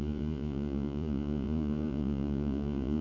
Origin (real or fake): fake